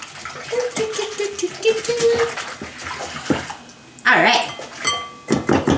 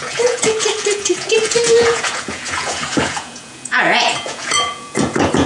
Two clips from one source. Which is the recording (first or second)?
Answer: first